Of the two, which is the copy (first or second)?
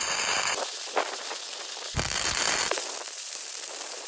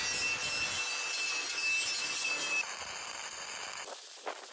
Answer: first